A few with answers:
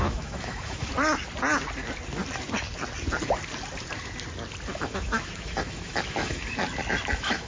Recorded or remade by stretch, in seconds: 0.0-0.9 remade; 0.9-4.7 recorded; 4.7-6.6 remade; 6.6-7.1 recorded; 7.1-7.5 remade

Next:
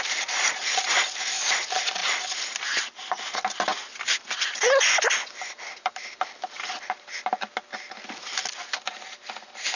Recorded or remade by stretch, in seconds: 0.0-9.8 recorded